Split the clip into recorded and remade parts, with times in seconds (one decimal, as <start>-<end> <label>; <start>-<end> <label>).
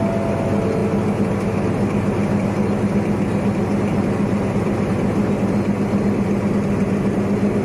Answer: 0.0-7.6 recorded